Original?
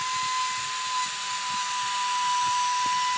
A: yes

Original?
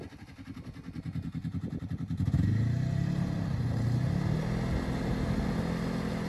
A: yes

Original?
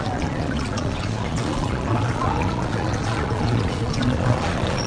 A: no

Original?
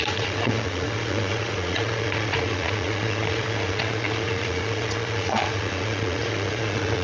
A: no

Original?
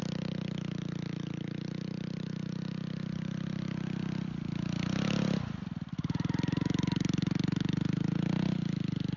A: yes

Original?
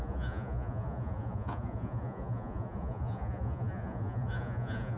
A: no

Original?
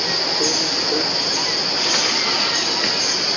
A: yes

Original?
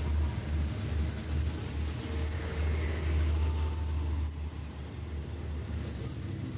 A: yes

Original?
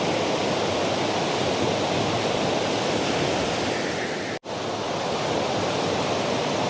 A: yes